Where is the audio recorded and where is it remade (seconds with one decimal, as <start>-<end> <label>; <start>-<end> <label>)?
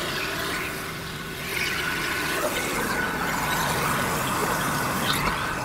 0.0-4.4 recorded; 4.4-5.0 remade; 5.0-5.6 recorded